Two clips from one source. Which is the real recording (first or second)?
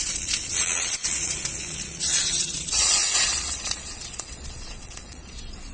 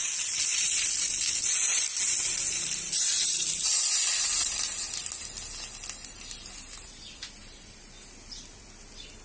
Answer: second